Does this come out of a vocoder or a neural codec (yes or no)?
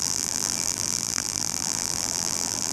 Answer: yes